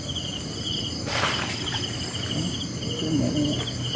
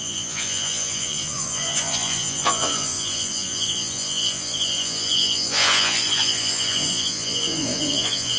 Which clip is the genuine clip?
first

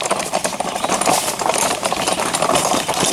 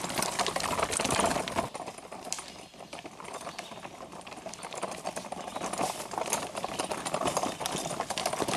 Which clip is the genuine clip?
second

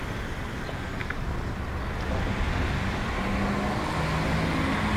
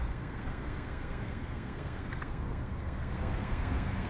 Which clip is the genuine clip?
first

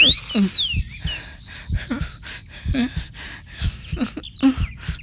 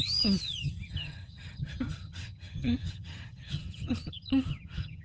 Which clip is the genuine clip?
first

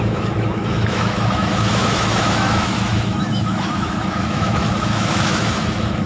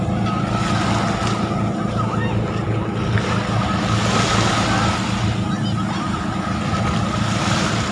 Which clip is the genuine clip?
second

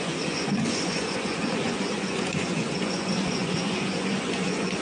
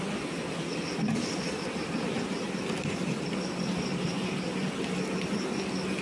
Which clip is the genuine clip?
second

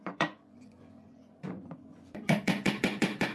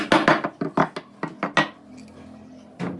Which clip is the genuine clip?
second